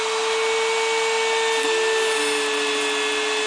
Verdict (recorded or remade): recorded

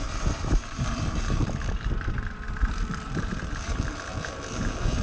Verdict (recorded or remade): remade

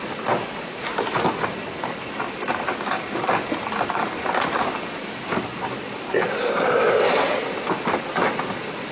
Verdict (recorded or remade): recorded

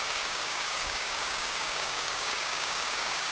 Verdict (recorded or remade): remade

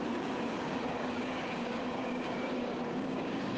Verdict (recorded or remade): remade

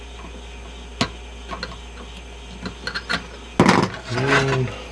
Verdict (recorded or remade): recorded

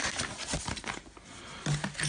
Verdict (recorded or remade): recorded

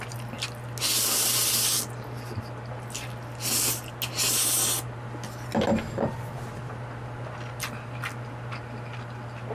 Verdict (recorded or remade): recorded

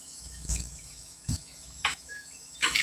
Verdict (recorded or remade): remade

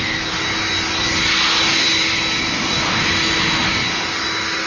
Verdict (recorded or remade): recorded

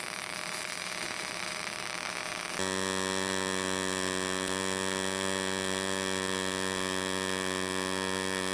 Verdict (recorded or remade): recorded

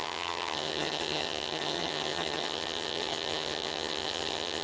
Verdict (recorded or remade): remade